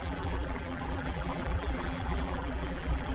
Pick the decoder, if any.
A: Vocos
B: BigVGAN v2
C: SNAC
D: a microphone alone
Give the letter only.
B